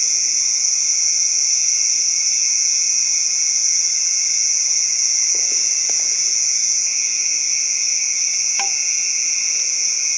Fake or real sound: fake